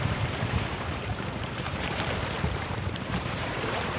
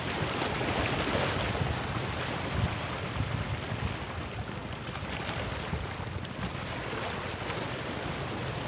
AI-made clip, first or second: first